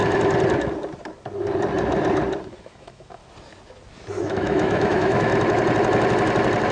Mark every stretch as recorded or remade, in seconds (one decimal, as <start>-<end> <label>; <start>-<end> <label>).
0.0-2.6 recorded; 2.6-3.2 remade; 3.2-4.2 recorded; 4.2-5.3 remade; 5.3-6.7 recorded